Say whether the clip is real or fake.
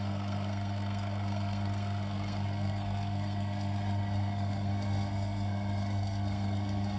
fake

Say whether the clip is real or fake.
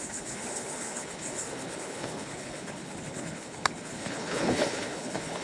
fake